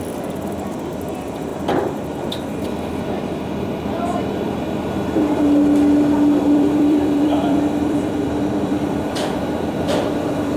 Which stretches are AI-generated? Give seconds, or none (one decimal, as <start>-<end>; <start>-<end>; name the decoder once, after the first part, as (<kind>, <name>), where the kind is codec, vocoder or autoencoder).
0.0-1.5 (vocoder, BigVGAN v2); 6.4-10.6

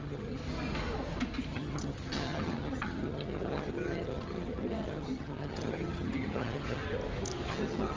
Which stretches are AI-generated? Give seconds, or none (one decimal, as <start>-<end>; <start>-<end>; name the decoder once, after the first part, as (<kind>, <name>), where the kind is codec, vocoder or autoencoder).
0.0-0.4 (vocoder, HiFi-GAN); 1.5-6.8; 7.5-8.0

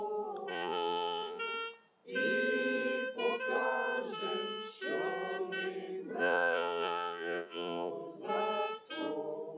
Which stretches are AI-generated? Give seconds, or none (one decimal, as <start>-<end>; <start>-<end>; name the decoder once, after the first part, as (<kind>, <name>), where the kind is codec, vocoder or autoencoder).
0.5-1.4 (vocoder, Vocos); 6.2-7.9

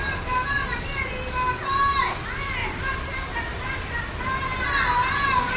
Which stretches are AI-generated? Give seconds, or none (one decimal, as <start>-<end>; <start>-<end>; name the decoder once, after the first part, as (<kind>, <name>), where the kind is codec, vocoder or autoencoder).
2.6-3.3 (vocoder, BigVGAN v2)

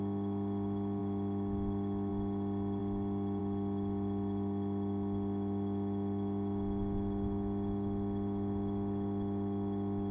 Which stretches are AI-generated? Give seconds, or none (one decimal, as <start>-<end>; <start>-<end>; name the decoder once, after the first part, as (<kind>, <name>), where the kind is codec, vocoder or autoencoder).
none

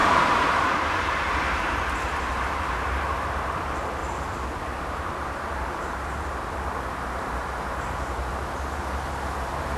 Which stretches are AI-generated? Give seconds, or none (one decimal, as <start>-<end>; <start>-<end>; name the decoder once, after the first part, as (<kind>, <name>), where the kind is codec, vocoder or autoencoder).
0.0-4.0 (vocoder, BigVGAN v2); 4.6-9.8

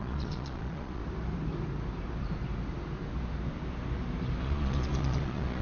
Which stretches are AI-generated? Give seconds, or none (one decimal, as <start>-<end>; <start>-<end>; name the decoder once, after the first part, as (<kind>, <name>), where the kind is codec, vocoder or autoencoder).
0.0-1.0 (vocoder, Vocos); 4.4-5.6

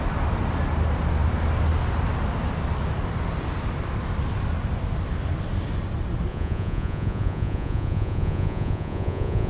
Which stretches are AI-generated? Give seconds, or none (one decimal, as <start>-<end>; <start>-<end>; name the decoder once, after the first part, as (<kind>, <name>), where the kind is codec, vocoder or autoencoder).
6.3-9.5 (vocoder, Vocos)